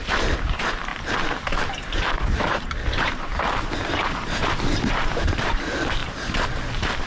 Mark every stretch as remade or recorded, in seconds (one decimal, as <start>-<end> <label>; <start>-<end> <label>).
0.0-0.9 remade; 0.9-2.1 recorded; 2.1-3.3 remade; 3.3-3.8 recorded; 3.8-6.0 remade; 6.0-7.1 recorded